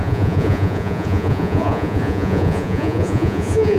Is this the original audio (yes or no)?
no